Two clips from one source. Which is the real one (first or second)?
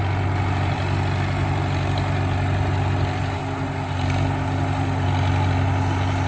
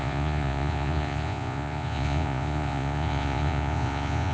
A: first